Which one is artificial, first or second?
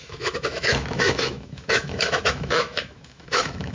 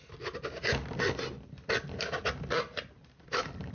first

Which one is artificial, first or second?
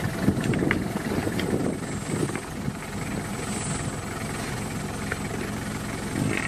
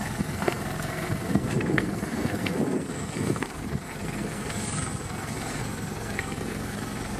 second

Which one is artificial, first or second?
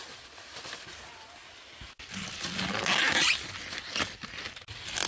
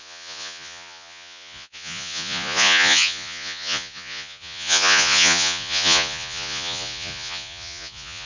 second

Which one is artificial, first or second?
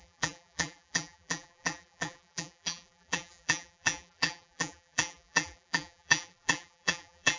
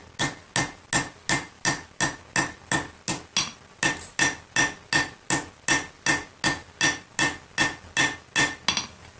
first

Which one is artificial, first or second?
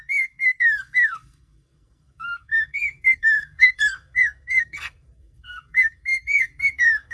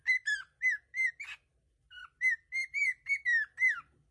first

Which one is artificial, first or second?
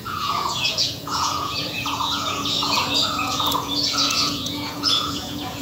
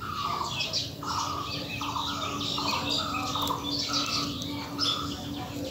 first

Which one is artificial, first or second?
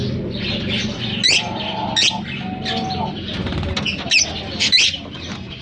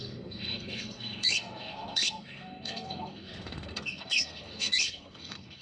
second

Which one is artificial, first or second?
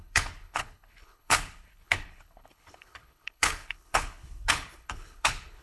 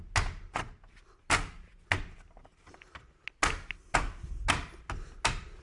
first